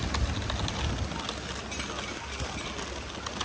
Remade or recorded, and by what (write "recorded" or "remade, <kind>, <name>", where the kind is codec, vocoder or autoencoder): recorded